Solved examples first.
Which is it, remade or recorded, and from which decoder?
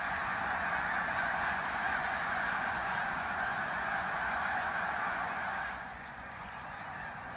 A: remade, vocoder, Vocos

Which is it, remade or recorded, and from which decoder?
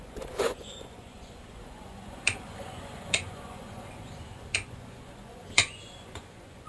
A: remade, vocoder, Vocos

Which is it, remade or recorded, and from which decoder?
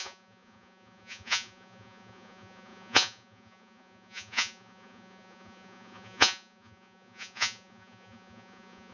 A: remade, vocoder, Vocos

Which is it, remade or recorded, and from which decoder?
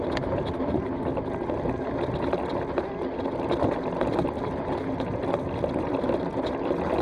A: recorded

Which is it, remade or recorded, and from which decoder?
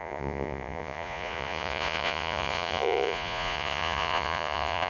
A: remade, vocoder, Vocos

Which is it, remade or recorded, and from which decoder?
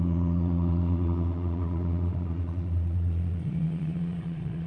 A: remade, vocoder, Vocos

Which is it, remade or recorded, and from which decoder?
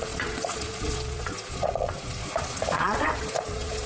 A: remade, vocoder, Vocos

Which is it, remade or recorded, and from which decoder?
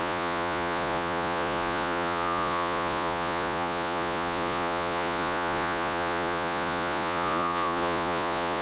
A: remade, vocoder, Vocos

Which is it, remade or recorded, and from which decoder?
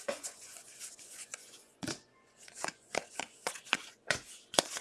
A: remade, vocoder, Vocos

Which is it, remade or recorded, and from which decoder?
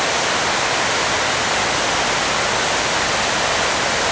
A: recorded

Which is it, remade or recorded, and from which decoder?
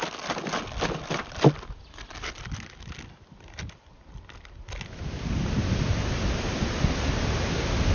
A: recorded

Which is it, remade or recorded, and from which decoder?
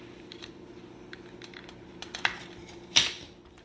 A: recorded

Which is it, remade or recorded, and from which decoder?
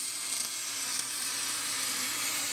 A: recorded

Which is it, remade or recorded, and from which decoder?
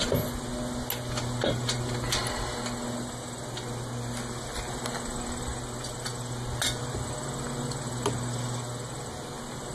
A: recorded